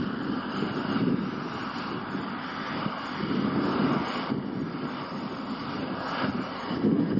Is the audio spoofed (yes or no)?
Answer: no